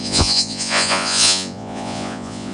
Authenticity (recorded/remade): remade